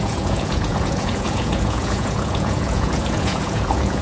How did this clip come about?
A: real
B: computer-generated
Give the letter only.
B